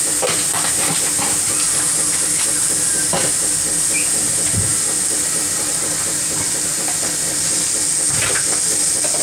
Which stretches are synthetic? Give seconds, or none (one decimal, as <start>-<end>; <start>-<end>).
none